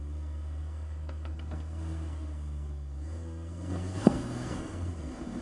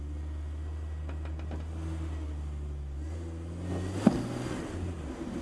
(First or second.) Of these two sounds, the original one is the second